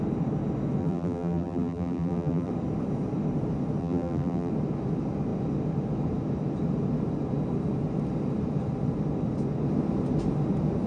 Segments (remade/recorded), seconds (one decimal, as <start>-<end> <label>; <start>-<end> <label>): 0.0-0.8 recorded; 0.8-2.5 remade; 2.5-3.8 recorded; 3.8-4.5 remade; 4.5-10.9 recorded